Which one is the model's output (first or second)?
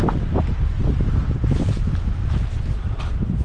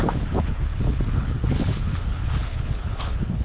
second